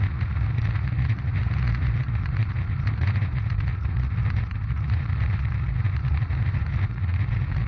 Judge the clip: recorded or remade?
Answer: remade